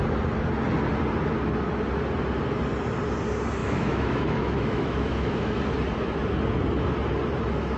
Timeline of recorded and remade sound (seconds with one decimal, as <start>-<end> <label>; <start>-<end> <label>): 0.0-3.6 recorded; 3.6-5.6 remade; 5.6-7.8 recorded